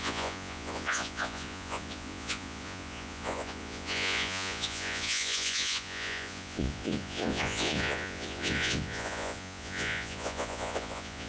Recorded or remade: remade